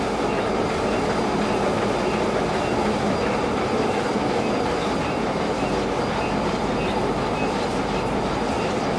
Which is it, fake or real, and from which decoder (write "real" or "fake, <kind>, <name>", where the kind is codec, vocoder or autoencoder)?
real